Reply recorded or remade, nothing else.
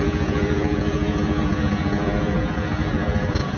remade